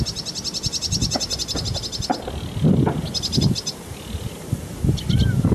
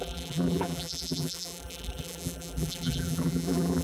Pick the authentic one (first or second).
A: first